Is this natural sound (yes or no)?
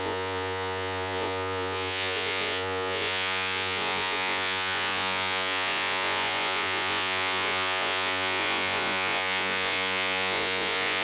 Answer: no